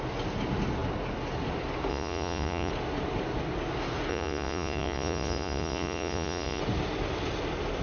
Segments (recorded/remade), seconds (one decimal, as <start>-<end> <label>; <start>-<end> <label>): 0.0-1.9 recorded; 1.9-2.7 remade; 2.7-4.1 recorded; 4.1-6.6 remade; 6.6-7.8 recorded